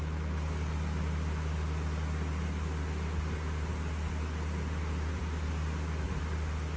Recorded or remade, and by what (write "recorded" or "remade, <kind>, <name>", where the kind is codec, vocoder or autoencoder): recorded